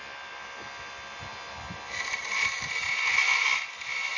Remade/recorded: recorded